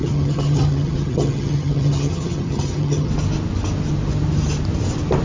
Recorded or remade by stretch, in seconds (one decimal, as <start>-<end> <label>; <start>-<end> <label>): 0.0-3.1 remade; 3.1-5.2 recorded